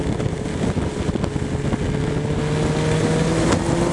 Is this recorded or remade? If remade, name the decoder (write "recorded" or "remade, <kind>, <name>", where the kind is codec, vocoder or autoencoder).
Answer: recorded